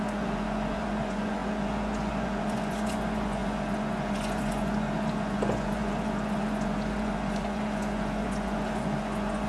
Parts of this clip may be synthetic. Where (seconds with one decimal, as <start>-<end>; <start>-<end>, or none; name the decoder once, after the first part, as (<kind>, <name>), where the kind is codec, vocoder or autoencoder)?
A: 0.0-9.5 (vocoder, Vocos)